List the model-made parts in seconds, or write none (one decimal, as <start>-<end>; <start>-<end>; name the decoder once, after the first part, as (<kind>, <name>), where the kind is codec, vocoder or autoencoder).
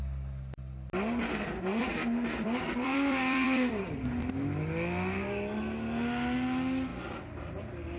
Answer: 1.7-4.1 (vocoder, BigVGAN v2); 6.9-7.6